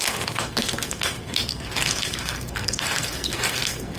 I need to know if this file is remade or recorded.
remade